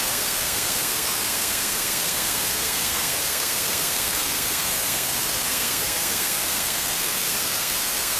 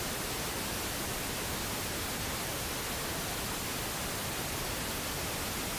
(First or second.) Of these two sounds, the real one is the second